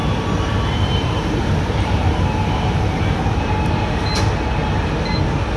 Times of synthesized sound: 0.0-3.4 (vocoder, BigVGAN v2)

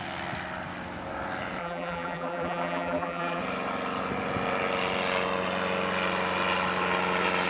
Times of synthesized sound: 1.6-3.4 (vocoder, BigVGAN v2)

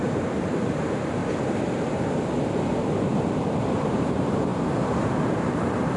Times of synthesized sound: 0.0-1.2 (vocoder, BigVGAN v2); 2.6-6.0

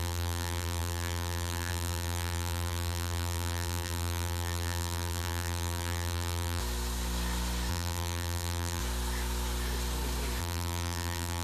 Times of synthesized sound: 0.0-6.6 (vocoder, BigVGAN v2); 7.7-8.8; 10.4-11.4